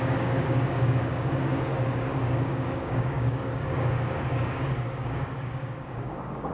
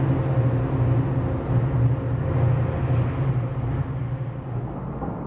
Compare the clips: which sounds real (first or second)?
second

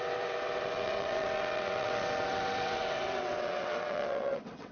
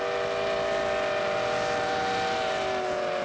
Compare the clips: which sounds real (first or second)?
second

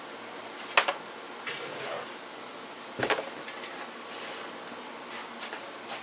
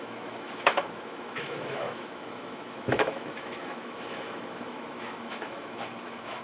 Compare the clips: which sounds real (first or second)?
first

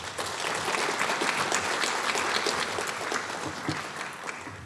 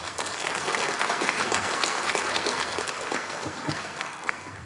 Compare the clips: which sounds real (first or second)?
first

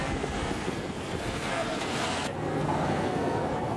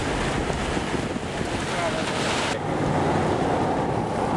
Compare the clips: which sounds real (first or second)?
second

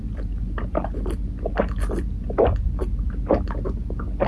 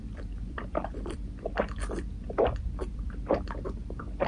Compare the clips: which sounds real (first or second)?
first